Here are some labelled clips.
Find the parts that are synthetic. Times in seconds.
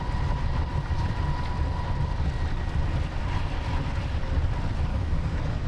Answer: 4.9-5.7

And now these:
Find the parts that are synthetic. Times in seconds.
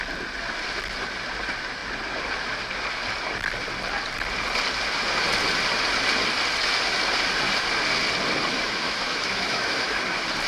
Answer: 8.5-10.0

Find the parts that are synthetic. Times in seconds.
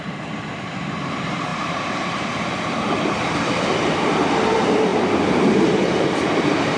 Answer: 0.0-6.8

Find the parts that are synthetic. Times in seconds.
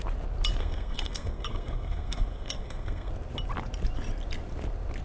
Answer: 0.6-3.1